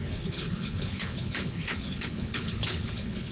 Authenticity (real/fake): fake